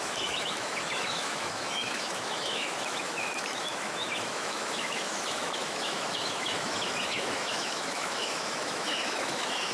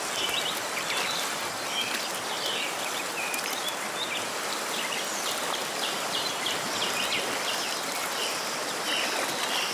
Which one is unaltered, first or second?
second